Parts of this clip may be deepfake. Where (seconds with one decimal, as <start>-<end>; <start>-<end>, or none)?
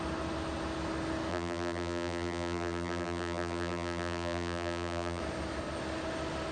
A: 1.3-5.2